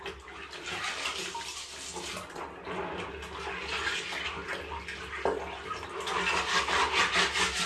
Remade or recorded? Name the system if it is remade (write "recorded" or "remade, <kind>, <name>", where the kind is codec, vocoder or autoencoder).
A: recorded